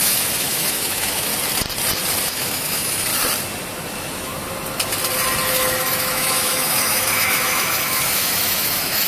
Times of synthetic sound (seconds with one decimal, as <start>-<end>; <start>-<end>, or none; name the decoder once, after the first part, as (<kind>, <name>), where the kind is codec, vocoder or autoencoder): 0.0-1.3 (autoencoder, DAC-VAE); 2.2-3.1; 3.9-4.3; 5.5-9.1